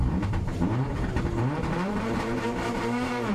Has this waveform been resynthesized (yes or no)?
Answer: yes